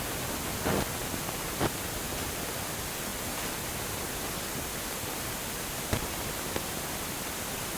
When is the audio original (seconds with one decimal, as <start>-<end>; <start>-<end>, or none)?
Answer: 0.0-7.8